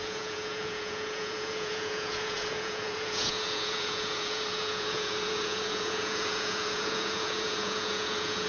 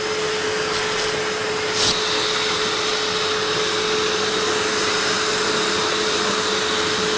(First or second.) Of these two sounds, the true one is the second